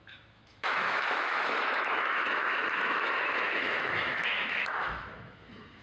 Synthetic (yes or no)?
yes